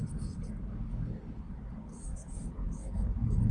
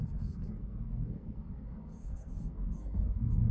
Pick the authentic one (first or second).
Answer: first